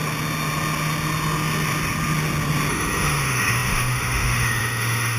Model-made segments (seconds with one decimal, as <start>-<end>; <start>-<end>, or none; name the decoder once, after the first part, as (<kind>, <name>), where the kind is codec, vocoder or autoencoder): 2.7-5.2 (autoencoder, DAC-VAE)